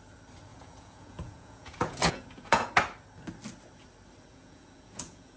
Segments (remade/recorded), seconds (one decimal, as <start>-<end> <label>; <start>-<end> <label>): 0.0-0.5 recorded; 0.5-2.7 remade; 2.7-4.3 recorded; 4.3-5.4 remade